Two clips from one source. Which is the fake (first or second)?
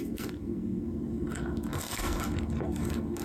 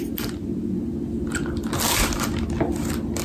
first